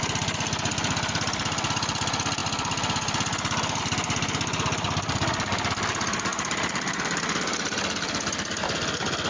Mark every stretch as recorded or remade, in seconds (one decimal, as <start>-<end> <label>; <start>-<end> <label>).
0.0-9.3 recorded